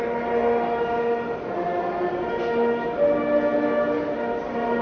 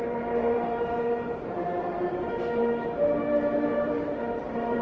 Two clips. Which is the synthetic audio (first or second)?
second